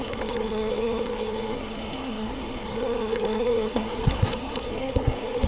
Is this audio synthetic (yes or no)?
yes